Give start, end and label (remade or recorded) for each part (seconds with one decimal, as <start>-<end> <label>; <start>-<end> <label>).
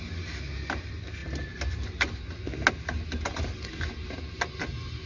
0.0-5.1 recorded